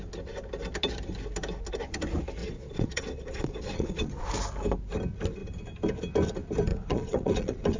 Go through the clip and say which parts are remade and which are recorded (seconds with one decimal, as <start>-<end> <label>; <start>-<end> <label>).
0.0-2.4 recorded; 2.4-4.2 remade; 4.2-6.7 recorded; 6.7-7.8 remade